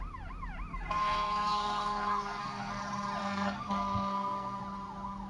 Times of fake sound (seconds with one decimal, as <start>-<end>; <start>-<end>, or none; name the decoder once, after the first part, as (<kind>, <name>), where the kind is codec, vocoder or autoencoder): 0.7-2.8 (codec, SNAC); 3.2-4.6